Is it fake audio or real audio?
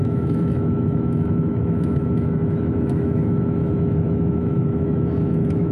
fake